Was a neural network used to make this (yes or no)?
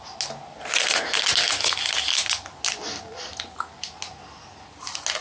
no